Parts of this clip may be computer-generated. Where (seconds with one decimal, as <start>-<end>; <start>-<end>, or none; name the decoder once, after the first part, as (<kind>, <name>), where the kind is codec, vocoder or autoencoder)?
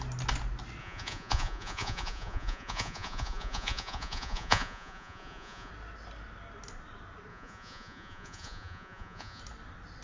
0.8-5.7 (vocoder, Vocos); 7.3-9.4